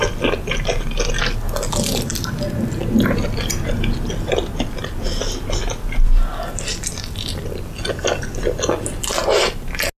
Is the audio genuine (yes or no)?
yes